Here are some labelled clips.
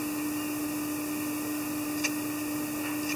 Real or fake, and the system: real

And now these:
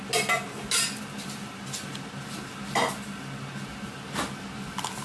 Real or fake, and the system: real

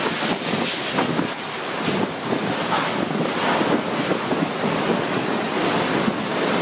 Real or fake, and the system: real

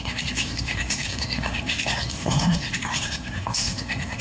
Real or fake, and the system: fake, codec, SNAC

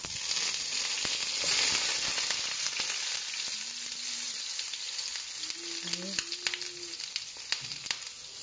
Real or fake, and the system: real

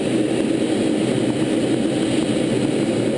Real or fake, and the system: real